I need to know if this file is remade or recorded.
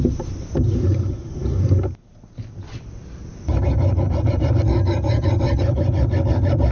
recorded